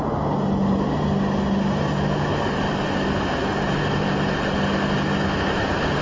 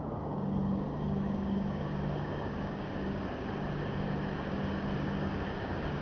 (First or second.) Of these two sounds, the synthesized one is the second